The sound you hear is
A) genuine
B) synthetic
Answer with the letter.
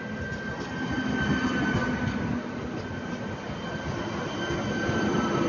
A